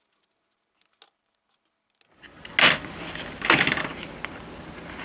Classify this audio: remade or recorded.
recorded